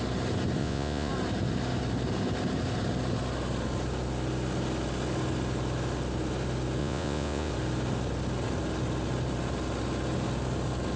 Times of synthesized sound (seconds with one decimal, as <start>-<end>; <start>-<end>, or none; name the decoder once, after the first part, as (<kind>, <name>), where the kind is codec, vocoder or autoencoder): 0.6-1.1 (vocoder, Vocos); 6.8-7.5